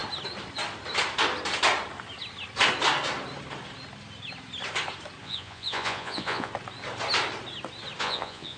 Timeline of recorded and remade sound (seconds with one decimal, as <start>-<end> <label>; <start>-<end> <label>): 0.0-5.2 recorded; 5.2-6.5 remade; 6.5-8.0 recorded; 8.0-8.6 remade